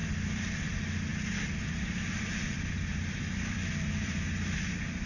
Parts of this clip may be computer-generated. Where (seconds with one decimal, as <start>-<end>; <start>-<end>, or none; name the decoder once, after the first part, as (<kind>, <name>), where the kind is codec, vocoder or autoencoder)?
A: 0.0-0.7 (vocoder, BigVGAN v2); 1.1-4.2